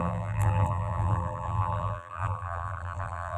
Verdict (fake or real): fake